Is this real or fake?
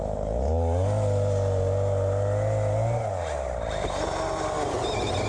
real